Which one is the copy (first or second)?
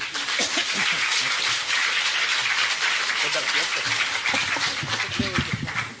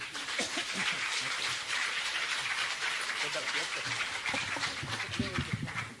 second